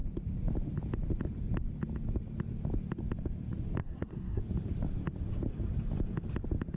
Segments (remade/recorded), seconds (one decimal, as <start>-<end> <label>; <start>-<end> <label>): 0.0-3.8 recorded; 3.8-4.4 remade; 4.4-6.8 recorded